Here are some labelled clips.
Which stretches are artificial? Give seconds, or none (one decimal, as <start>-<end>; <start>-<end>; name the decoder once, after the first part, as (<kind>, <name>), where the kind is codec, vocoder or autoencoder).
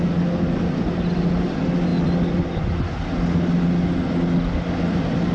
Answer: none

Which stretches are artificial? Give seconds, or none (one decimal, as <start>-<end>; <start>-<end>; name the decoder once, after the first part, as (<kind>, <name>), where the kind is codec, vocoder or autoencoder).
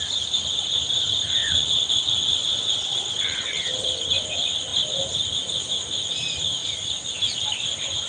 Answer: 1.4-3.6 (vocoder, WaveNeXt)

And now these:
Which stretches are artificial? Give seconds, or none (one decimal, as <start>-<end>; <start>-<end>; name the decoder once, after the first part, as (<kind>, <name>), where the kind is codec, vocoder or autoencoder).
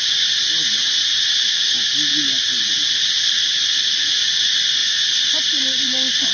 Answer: none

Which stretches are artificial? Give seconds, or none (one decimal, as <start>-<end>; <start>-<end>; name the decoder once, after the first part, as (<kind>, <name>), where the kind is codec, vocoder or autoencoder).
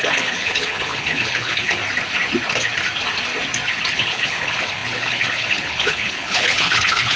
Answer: 0.0-1.8 (codec, HILCodec); 3.9-7.2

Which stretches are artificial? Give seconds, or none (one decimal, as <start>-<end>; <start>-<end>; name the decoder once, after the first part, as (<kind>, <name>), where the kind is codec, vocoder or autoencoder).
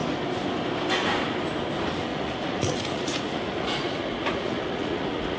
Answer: 2.1-5.4 (vocoder, Vocos)